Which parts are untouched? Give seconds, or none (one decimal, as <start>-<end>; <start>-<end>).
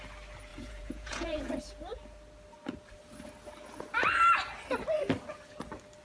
0.0-0.5; 1.5-6.0